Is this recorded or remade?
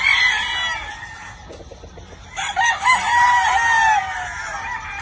recorded